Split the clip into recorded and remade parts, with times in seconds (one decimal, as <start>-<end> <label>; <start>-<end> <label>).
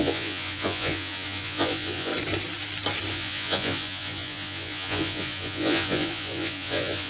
0.0-2.1 remade; 2.1-3.1 recorded; 3.1-7.1 remade